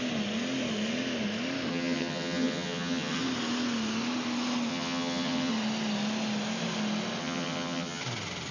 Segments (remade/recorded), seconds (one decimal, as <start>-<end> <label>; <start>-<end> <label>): 0.0-1.7 recorded; 1.7-3.2 remade; 3.2-4.7 recorded; 4.7-5.5 remade; 5.5-7.2 recorded; 7.2-8.0 remade; 8.0-8.5 recorded